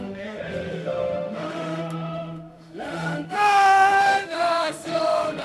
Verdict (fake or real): fake